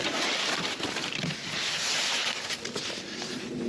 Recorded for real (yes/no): yes